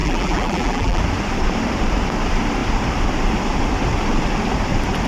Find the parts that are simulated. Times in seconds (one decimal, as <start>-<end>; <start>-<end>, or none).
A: 0.0-1.0